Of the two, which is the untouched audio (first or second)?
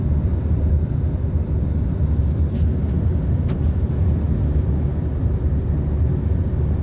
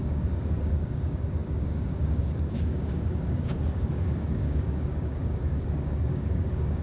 first